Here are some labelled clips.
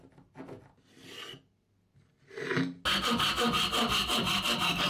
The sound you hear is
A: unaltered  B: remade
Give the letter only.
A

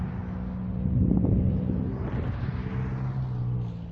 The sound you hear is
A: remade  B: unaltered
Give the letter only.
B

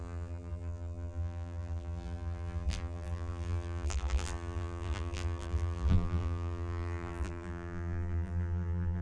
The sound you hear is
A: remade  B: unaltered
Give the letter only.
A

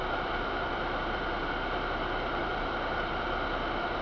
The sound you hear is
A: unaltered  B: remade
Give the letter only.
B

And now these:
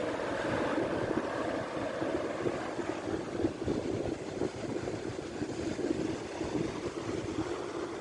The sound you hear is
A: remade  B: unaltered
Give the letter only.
B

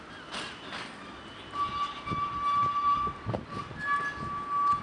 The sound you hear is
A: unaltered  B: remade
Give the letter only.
A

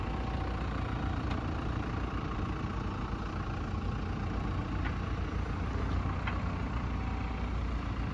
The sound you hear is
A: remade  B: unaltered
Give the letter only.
B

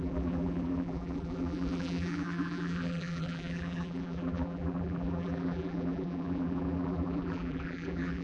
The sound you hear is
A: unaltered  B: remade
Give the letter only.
B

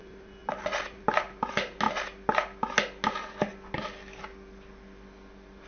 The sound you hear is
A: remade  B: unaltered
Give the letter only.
B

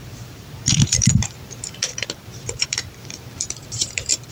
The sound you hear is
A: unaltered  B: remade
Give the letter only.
B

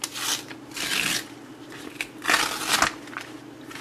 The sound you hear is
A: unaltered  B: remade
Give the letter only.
A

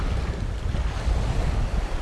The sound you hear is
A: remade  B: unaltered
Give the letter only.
B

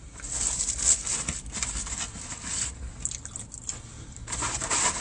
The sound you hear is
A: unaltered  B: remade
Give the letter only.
B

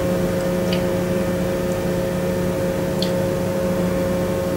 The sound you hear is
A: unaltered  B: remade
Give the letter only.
A